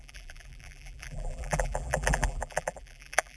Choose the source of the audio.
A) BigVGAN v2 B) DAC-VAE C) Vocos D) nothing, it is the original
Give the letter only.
A